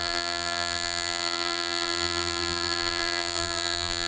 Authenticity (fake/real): fake